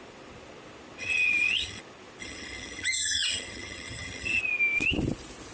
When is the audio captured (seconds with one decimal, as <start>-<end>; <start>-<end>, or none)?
0.0-1.0; 1.8-2.2; 4.4-5.5